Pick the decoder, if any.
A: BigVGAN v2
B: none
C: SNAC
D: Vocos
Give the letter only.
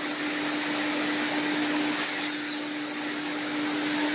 B